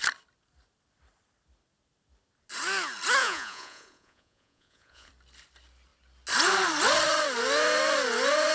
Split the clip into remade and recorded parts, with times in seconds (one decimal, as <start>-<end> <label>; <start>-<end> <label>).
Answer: 0.0-3.2 recorded; 3.2-5.1 remade; 5.1-8.5 recorded